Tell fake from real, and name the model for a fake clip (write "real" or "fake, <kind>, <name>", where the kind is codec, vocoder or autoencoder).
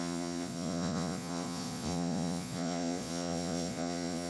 fake, vocoder, Vocos